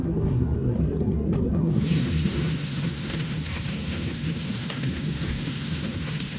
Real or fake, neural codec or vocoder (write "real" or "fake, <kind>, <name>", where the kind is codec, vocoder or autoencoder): fake, codec, SNAC